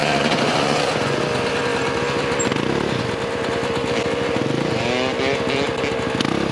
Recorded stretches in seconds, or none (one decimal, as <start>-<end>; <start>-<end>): 1.2-6.5